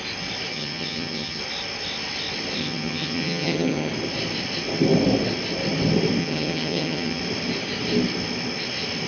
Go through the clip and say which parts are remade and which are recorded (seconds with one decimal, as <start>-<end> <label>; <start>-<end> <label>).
0.0-0.5 recorded; 0.5-1.4 remade; 1.4-2.6 recorded; 2.6-3.9 remade; 3.9-6.2 recorded; 6.2-7.2 remade; 7.2-9.1 recorded